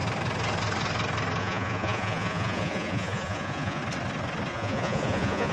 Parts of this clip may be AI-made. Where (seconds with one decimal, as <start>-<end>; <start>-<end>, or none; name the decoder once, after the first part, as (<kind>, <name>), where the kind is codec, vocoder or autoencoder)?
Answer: 1.4-3.8 (vocoder, Vocos); 4.5-5.5